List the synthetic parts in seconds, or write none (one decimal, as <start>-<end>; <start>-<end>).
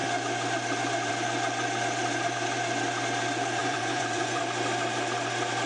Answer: 3.6-4.4